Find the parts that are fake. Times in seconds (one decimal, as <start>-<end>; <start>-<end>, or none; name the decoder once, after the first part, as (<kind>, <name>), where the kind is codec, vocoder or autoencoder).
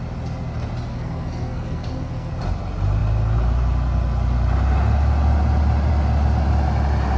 0.9-2.3 (codec, SNAC)